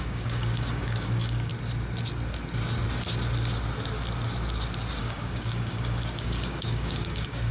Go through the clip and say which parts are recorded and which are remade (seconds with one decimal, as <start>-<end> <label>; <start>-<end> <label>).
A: 0.0-1.5 remade; 1.5-5.0 recorded; 5.0-7.5 remade